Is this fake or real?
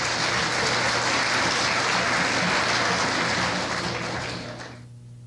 real